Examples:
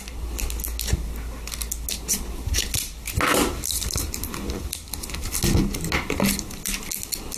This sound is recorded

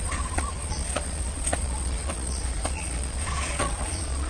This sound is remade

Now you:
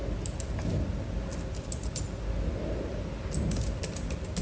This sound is recorded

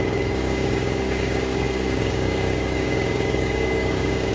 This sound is remade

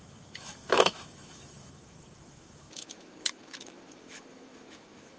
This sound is remade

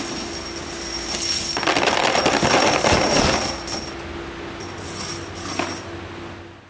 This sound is recorded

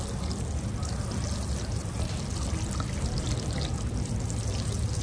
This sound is recorded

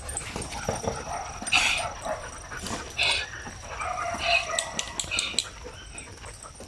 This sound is recorded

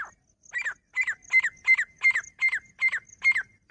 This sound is recorded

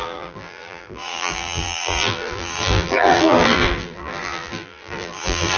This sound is remade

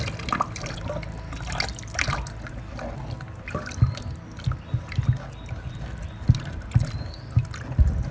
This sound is recorded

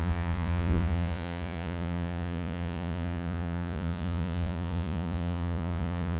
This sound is remade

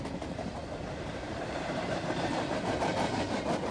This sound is recorded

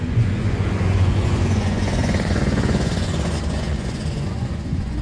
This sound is remade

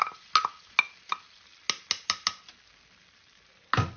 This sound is recorded